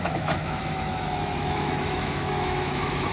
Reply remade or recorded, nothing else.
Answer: remade